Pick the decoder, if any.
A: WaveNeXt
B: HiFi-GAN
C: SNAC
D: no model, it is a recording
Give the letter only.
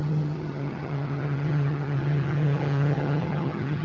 B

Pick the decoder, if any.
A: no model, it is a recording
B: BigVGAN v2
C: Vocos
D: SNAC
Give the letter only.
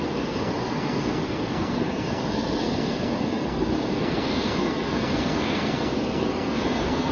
D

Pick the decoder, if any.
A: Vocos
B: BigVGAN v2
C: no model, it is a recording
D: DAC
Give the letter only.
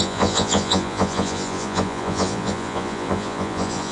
A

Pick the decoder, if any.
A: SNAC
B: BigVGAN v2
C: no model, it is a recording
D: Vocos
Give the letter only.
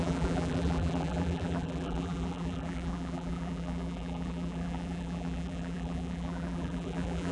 B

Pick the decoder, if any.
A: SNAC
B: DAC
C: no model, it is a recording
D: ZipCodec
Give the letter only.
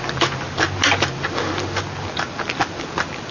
C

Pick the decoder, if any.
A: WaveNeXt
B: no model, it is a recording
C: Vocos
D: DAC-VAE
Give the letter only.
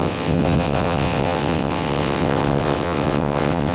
A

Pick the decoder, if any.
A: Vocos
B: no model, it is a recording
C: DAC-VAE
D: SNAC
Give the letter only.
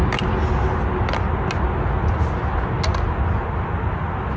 B